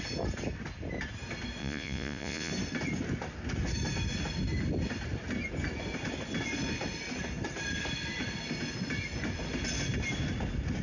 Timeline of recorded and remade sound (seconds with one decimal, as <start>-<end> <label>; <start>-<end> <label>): 0.0-1.6 recorded; 1.6-2.5 remade; 2.5-10.8 recorded